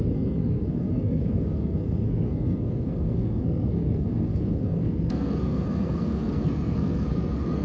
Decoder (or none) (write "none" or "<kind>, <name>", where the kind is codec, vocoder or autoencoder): codec, SNAC